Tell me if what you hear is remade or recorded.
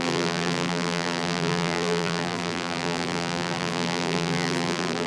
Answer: remade